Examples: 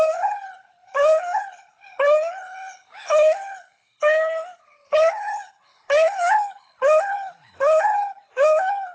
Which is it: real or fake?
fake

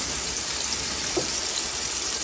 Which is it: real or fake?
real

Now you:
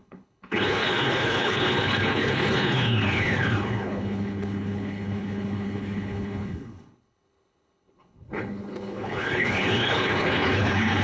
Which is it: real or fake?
fake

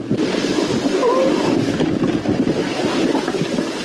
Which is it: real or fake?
real